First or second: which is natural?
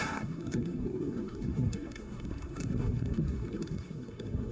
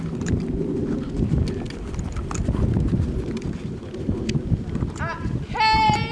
second